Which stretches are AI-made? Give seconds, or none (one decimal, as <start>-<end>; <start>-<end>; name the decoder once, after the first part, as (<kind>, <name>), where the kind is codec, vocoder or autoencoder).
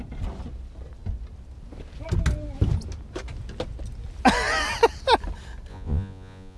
5.7-6.6 (vocoder, Vocos)